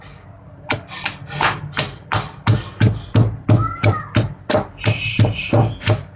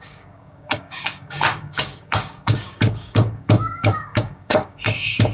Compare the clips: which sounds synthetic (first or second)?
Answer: second